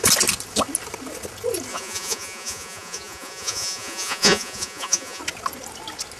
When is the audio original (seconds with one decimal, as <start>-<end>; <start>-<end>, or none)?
0.0-1.7; 5.2-6.2